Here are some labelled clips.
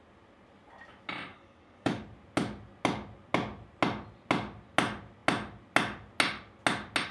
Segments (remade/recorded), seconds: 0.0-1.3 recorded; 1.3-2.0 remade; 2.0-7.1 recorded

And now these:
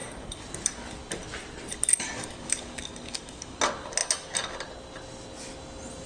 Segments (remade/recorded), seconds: 0.0-1.9 recorded; 1.9-3.6 remade; 3.6-6.1 recorded

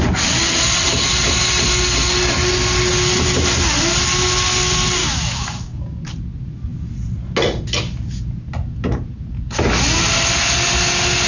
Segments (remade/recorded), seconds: 0.0-5.0 recorded; 5.0-6.1 remade; 6.1-11.3 recorded

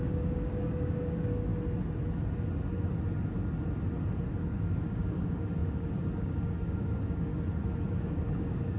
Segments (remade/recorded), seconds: 0.0-1.5 remade; 1.5-4.3 recorded; 4.3-7.3 remade; 7.3-8.0 recorded; 8.0-8.8 remade